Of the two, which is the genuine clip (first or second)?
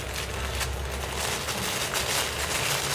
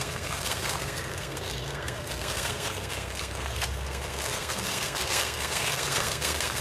first